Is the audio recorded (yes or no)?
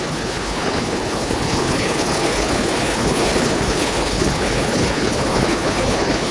no